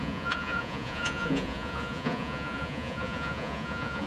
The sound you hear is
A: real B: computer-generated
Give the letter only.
B